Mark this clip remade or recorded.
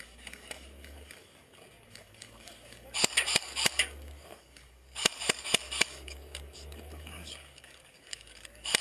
remade